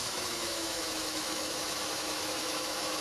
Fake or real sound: fake